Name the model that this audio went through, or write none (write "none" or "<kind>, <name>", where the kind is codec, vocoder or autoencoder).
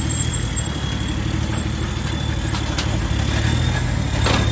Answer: none